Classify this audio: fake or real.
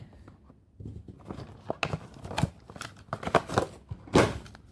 real